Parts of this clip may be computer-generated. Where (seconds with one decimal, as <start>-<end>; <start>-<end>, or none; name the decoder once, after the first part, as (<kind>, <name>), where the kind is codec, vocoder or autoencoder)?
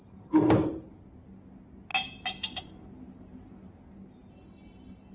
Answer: none